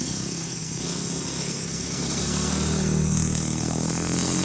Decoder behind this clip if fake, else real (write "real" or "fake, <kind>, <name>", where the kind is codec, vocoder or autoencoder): fake, codec, SNAC